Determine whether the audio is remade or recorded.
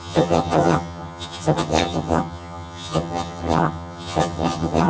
remade